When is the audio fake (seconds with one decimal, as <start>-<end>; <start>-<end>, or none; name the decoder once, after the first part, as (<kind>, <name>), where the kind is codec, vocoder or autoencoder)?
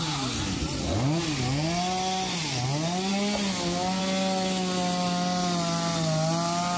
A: none